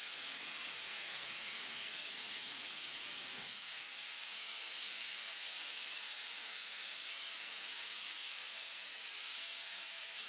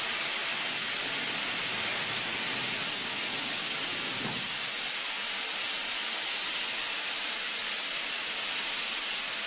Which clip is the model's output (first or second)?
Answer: first